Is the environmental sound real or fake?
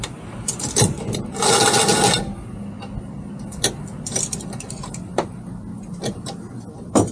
real